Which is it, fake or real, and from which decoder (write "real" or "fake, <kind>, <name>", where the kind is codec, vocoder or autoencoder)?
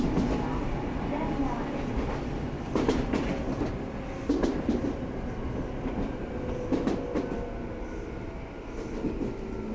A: real